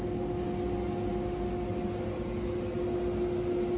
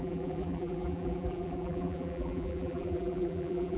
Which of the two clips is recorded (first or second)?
first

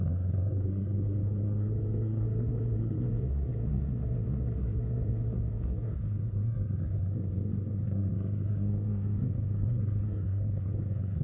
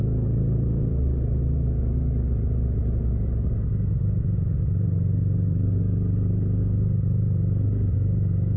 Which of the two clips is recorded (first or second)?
second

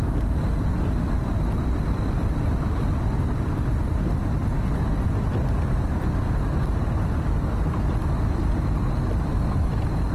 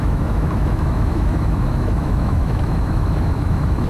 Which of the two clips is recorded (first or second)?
first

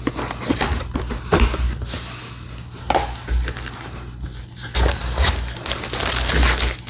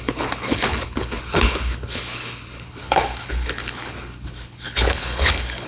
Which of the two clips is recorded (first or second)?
first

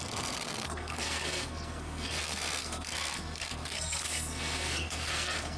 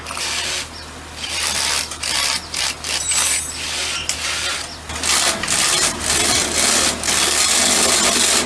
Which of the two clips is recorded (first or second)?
second